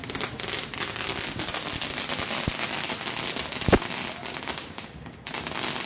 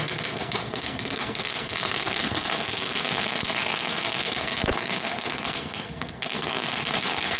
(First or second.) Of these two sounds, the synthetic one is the second